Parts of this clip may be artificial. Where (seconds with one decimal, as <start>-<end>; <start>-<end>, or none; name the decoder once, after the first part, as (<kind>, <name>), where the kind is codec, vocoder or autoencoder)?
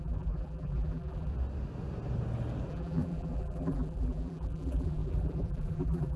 0.0-1.3 (vocoder, BigVGAN v2); 2.7-6.2